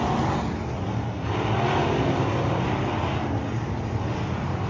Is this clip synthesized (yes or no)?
no